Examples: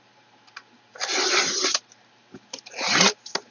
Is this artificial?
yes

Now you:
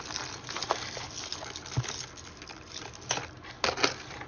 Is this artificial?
no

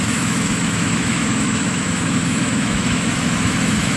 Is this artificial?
yes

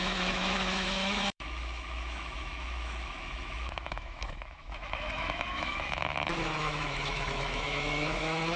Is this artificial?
yes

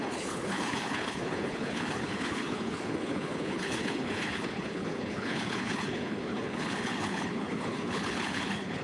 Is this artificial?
yes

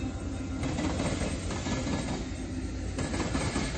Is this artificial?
no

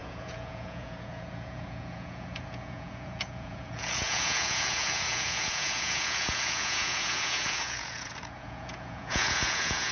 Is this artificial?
yes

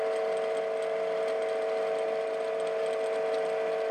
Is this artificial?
no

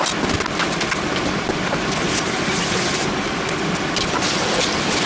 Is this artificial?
no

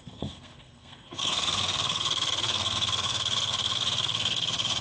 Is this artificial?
yes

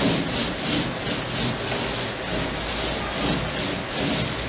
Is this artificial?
no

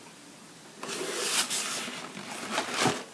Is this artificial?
no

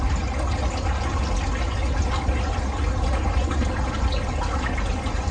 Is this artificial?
no